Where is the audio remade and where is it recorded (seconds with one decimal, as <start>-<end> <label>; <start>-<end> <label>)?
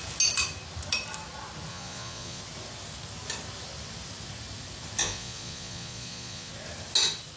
0.0-1.7 recorded; 1.7-2.4 remade; 2.4-5.0 recorded; 5.0-6.5 remade; 6.5-7.4 recorded